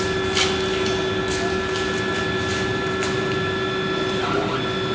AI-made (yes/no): no